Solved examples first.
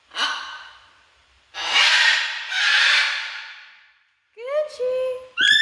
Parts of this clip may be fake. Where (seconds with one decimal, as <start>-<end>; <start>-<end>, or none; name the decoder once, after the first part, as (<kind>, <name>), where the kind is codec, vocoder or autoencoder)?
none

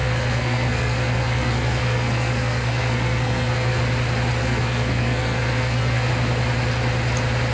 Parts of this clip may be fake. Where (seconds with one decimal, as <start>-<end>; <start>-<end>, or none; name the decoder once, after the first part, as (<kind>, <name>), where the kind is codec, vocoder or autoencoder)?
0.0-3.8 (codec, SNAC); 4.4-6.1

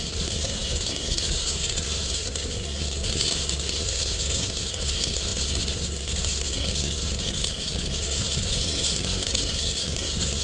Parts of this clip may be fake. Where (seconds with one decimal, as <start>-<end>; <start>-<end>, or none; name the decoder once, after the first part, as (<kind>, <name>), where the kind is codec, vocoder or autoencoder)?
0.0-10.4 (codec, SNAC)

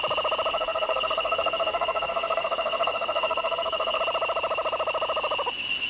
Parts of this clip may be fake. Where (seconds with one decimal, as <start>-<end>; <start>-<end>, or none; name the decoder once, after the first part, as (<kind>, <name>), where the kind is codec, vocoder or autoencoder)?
0.5-4.0 (codec, SNAC)

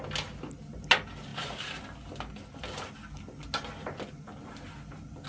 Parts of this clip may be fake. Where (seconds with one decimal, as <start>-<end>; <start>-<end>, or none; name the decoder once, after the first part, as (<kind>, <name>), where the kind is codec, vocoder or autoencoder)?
none

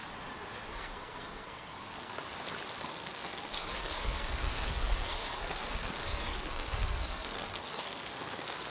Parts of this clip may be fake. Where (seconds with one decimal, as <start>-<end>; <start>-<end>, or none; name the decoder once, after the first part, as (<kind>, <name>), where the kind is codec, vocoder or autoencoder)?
0.7-2.2 (codec, SNAC); 2.9-8.7

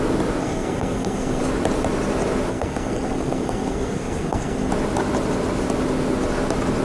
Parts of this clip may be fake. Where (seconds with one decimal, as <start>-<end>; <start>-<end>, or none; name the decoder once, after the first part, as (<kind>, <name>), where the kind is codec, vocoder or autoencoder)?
0.4-1.4 (codec, SNAC); 2.5-4.7

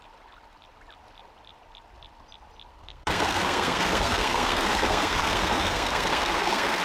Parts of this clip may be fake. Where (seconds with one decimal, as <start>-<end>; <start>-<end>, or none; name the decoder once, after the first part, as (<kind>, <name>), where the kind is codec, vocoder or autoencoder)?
2.7-6.8 (codec, SNAC)